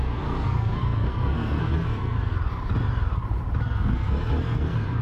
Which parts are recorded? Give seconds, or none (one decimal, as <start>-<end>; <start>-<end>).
2.3-3.6